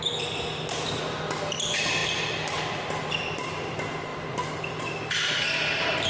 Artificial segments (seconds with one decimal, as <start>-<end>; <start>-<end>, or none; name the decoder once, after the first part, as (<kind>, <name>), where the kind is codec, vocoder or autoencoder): none